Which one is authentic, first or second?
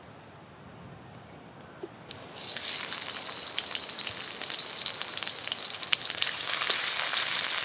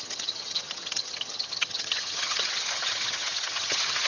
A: first